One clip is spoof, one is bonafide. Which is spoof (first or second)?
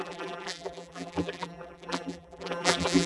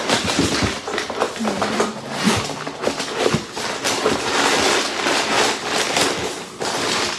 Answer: first